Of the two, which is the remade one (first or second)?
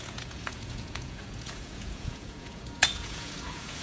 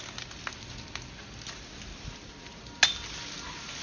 first